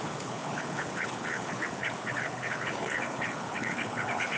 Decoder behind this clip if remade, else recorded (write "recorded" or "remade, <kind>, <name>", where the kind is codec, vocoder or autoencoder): remade, codec, HILCodec